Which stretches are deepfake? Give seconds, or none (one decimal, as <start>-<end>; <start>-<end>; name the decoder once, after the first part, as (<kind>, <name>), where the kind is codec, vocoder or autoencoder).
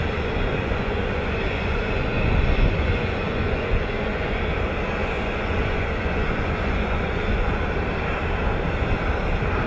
0.0-4.4 (vocoder, Vocos); 5.0-7.6